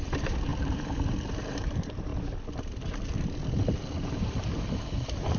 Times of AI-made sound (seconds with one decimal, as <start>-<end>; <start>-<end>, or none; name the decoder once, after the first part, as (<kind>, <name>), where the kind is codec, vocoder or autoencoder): 0.0-2.1 (vocoder, BigVGAN v2); 3.7-5.4